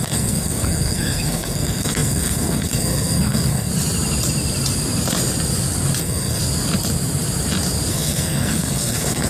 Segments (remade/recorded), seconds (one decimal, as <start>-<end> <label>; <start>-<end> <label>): 0.0-3.7 remade; 3.7-6.0 recorded; 6.0-6.4 remade; 6.4-7.9 recorded; 7.9-9.3 remade

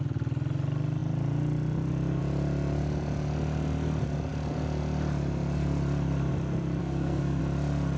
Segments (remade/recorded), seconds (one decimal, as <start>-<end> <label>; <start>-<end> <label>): 0.0-6.8 recorded; 6.8-7.4 remade; 7.4-8.0 recorded

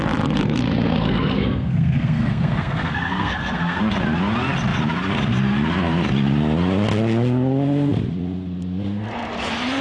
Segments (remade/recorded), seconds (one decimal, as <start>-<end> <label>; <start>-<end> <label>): 0.0-0.4 recorded; 0.4-3.8 remade; 3.8-9.8 recorded

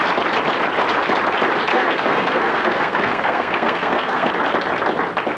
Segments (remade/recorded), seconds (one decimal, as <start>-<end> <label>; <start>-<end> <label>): 0.0-1.7 recorded; 1.7-4.3 remade; 4.3-5.4 recorded

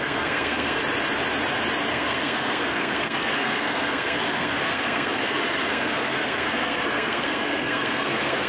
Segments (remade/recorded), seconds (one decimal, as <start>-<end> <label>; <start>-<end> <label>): 0.0-0.8 remade; 0.8-1.9 recorded; 1.9-8.5 remade

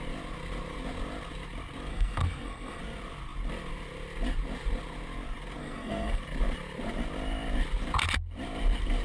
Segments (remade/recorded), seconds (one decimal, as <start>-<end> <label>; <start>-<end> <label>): 0.0-1.9 recorded; 1.9-2.8 remade; 2.8-5.6 recorded; 5.6-6.2 remade; 6.2-9.0 recorded